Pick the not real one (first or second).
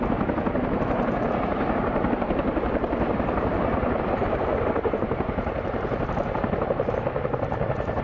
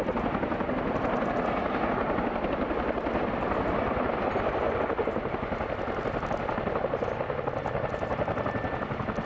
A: first